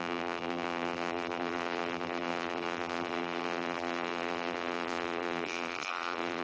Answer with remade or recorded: remade